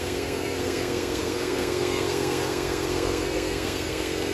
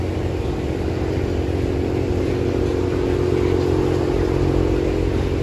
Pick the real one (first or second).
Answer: second